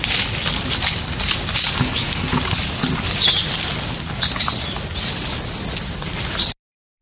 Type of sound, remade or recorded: recorded